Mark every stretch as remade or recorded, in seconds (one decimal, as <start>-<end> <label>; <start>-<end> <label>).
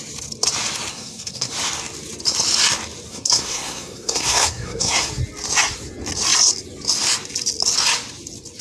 0.0-0.9 recorded; 0.9-1.5 remade; 1.5-3.1 recorded; 3.1-5.1 remade; 5.1-8.6 recorded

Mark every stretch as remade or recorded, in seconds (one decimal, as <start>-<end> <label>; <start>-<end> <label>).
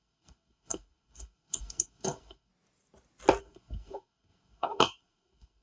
0.0-2.5 remade; 2.5-3.4 recorded; 3.4-5.6 remade